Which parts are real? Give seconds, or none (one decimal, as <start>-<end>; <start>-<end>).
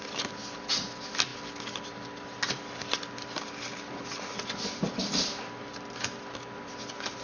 0.0-7.2